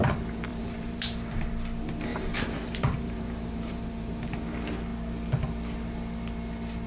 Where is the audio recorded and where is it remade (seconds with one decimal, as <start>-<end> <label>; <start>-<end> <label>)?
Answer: 0.0-0.5 recorded; 0.5-1.4 remade; 1.4-2.1 recorded; 2.1-4.3 remade; 4.3-6.9 recorded